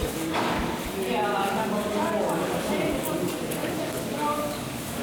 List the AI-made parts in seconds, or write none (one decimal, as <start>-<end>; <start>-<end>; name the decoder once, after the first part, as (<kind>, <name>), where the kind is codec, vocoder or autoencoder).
0.0-0.9 (codec, DAC); 1.3-2.6; 3.6-5.0